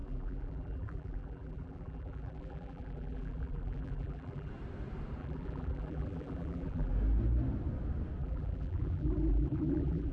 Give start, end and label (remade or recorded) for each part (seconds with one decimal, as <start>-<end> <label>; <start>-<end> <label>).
0.0-4.5 remade; 4.5-5.2 recorded; 5.2-6.9 remade; 6.9-8.2 recorded; 8.2-10.1 remade